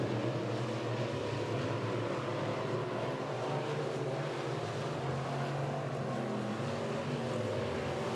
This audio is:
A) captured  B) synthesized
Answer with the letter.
A